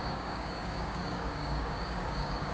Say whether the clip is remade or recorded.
remade